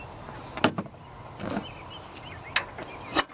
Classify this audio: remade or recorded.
recorded